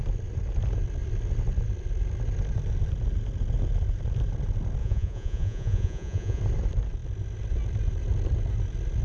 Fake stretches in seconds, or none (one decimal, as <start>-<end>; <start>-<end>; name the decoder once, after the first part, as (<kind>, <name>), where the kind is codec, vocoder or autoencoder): 4.8-6.4 (vocoder, Vocos)